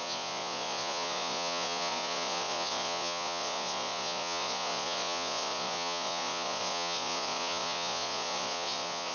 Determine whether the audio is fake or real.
fake